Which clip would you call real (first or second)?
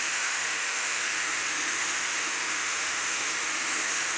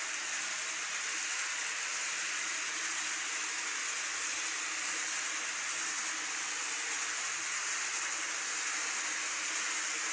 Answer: second